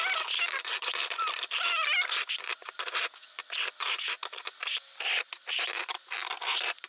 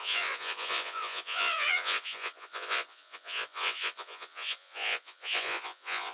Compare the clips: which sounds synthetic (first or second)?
second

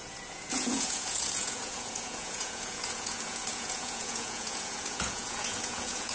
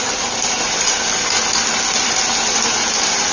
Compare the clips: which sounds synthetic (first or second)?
first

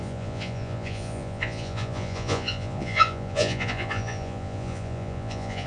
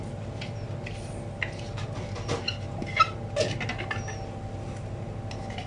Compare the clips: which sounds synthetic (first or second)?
first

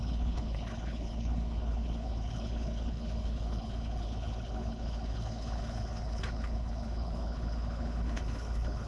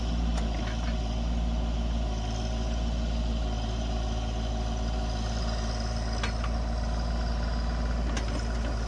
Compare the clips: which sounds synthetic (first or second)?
first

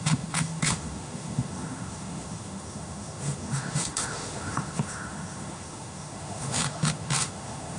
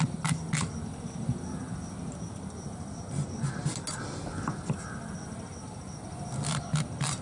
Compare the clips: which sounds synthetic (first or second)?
first